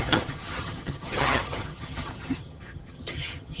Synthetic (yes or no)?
yes